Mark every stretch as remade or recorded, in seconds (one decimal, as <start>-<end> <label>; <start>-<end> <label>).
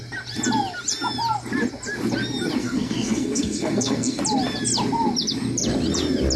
0.0-2.6 recorded; 2.6-4.2 remade; 4.2-6.4 recorded